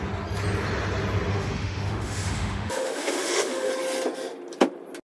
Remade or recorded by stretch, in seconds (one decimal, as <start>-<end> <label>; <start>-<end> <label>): 0.0-1.3 recorded; 1.3-3.7 remade; 3.7-5.1 recorded